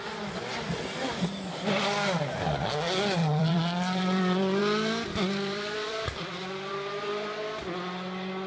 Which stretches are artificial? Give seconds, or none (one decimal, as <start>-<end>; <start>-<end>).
3.2-4.6; 5.1-6.7